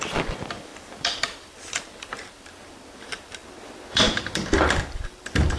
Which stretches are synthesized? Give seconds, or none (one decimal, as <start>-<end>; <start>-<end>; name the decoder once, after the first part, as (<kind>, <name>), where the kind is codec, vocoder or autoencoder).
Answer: 0.0-5.6 (vocoder, BigVGAN v2)